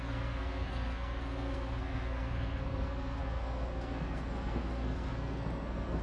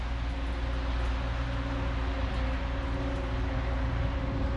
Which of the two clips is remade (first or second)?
first